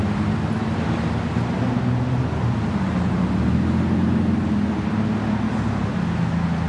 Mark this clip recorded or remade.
recorded